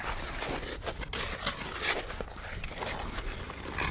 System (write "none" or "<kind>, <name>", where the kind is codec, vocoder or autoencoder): none